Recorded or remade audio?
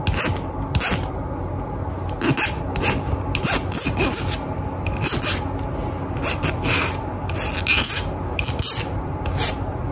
recorded